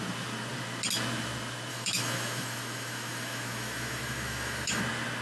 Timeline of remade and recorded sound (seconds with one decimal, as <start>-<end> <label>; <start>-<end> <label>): 0.0-1.7 recorded; 1.7-4.8 remade; 4.8-5.2 recorded

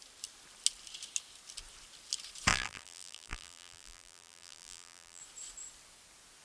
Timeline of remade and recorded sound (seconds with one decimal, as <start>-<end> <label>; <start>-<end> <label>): 0.0-2.5 recorded; 2.5-5.2 remade; 5.2-6.4 recorded

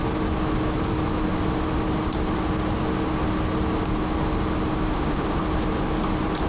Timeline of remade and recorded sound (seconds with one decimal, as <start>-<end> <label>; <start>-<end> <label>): 0.0-4.9 recorded; 4.9-5.4 remade; 5.4-6.5 recorded

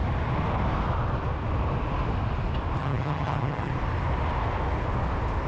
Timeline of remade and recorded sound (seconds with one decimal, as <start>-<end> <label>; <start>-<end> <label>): 0.0-2.8 recorded; 2.8-3.7 remade; 3.7-5.5 recorded

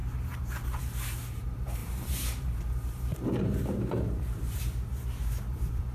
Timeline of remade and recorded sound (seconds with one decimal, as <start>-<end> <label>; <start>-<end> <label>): 0.0-5.9 remade

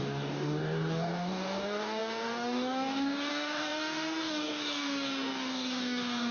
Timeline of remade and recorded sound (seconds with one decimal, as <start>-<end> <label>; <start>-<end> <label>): 0.0-6.3 remade

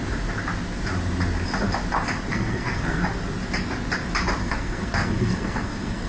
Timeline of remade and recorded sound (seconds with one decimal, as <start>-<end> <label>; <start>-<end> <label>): 0.0-2.3 recorded; 2.3-3.0 remade; 3.0-4.4 recorded; 4.4-6.1 remade